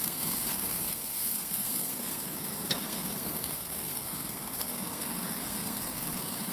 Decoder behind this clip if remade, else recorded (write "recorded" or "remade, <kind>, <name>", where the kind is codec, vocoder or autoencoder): remade, codec, SNAC